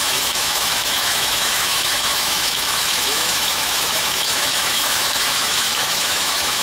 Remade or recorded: remade